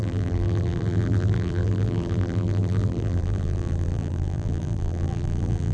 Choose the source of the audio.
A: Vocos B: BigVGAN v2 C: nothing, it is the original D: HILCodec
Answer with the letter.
B